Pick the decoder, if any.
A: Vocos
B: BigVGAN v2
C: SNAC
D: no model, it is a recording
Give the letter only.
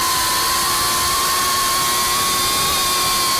D